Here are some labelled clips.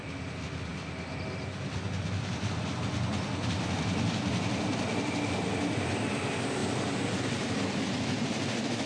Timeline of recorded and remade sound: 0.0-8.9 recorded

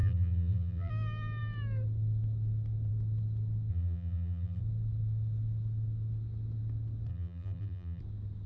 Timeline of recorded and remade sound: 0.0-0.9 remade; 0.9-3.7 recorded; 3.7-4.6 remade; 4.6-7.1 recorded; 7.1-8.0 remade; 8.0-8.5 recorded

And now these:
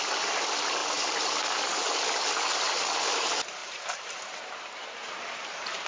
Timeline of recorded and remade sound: 0.0-3.6 recorded; 3.6-4.6 remade; 4.6-5.9 recorded